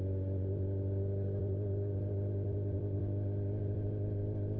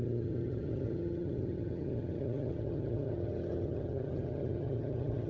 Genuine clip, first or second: first